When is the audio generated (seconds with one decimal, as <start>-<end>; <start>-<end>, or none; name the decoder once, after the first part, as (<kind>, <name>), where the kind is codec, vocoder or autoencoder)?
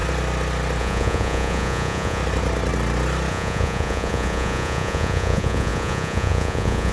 0.8-2.2 (vocoder, Vocos); 3.3-6.9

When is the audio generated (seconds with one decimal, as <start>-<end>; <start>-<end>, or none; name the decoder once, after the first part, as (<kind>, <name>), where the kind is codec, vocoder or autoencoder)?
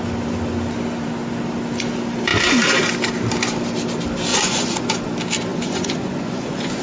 4.3-4.9 (vocoder, Vocos); 5.5-6.8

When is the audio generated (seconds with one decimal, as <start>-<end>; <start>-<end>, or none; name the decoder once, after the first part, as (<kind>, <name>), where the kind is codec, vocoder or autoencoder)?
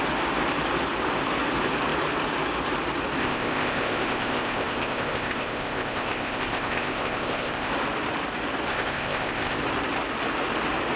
3.2-7.7 (codec, ZipCodec); 8.7-9.6